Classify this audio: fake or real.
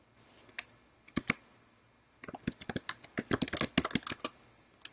real